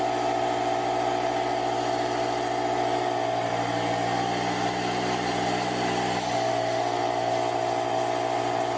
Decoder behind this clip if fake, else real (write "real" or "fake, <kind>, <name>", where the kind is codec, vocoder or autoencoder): real